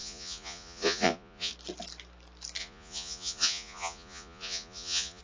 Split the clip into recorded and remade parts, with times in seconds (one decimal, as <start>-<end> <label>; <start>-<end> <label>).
0.0-1.5 remade; 1.5-2.6 recorded; 2.6-5.2 remade